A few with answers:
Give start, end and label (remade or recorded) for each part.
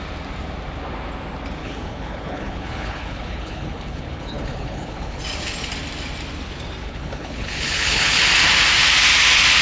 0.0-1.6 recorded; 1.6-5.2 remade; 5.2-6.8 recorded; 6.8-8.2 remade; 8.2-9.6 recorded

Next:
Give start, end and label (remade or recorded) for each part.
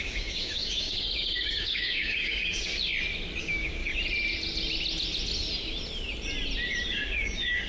0.0-2.7 remade; 2.7-3.4 recorded; 3.4-3.9 remade; 3.9-6.9 recorded; 6.9-7.7 remade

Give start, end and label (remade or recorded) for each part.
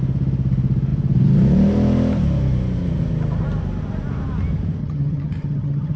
0.0-4.8 recorded; 4.8-6.0 remade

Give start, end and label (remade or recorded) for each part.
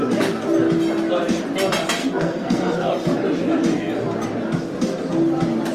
0.0-2.0 recorded; 2.0-2.9 remade; 2.9-5.7 recorded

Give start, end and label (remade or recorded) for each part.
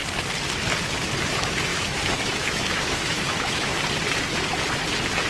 0.0-1.2 recorded; 1.2-3.7 remade; 3.7-5.3 recorded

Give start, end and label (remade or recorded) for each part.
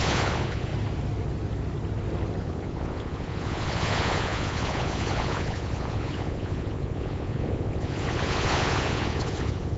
0.0-0.7 remade; 0.7-2.4 recorded; 2.4-9.8 remade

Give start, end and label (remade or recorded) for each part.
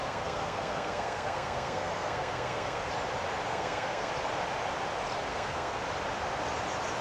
0.0-2.9 remade; 2.9-3.5 recorded; 3.5-4.1 remade; 4.1-5.3 recorded; 5.3-5.8 remade; 5.8-7.0 recorded